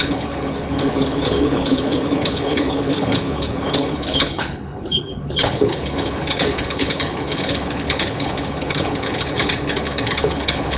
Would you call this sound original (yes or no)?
no